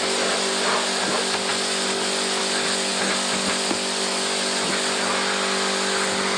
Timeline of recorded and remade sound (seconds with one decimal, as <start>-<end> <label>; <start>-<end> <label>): 0.0-6.4 recorded